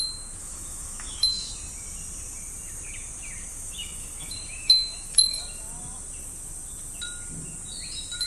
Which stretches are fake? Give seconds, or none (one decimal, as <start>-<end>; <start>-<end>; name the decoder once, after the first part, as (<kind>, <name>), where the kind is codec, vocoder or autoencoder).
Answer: 0.4-1.5 (autoencoder, DAC-VAE); 3.5-5.4